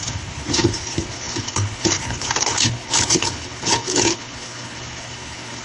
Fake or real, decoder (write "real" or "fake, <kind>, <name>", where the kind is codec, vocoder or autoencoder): fake, codec, HILCodec